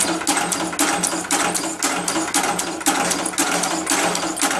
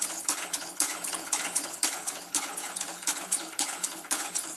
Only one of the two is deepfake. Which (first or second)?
second